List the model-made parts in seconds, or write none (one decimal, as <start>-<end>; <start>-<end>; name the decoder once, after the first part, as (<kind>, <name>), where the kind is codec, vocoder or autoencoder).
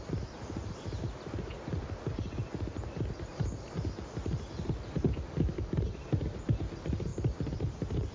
none